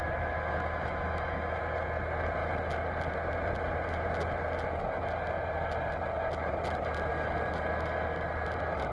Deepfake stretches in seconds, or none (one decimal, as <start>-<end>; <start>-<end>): 0.0-1.6